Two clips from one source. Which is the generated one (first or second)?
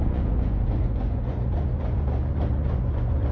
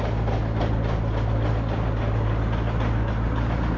first